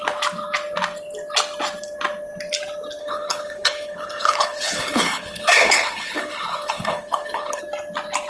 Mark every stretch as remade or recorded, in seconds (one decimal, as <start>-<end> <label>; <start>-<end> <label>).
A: 0.0-3.0 recorded; 3.0-7.6 remade; 7.6-8.3 recorded